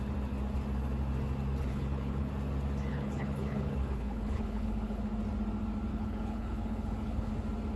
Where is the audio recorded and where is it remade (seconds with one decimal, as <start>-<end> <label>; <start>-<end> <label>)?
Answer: 0.0-1.7 recorded; 1.7-2.3 remade; 2.3-2.9 recorded; 2.9-5.0 remade; 5.0-5.9 recorded; 5.9-7.3 remade; 7.3-7.8 recorded